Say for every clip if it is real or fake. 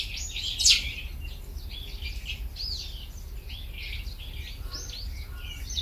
real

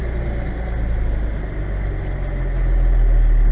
real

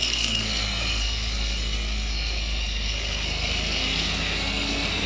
fake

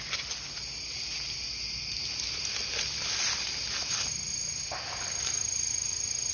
real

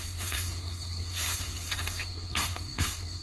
fake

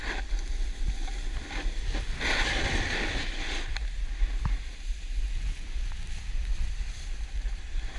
real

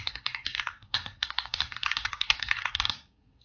fake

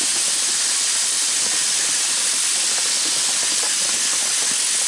real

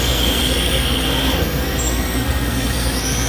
fake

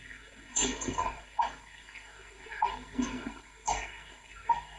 fake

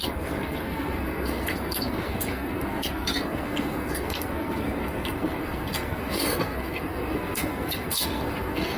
fake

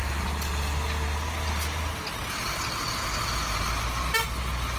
real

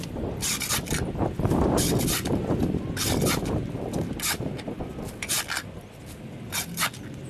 real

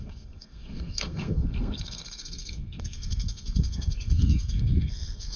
fake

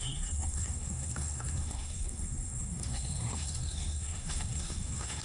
fake